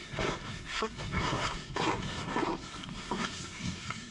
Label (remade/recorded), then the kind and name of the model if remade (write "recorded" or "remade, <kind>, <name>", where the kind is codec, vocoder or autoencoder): remade, codec, SNAC